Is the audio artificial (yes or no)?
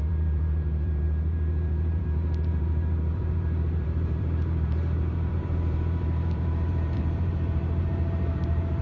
yes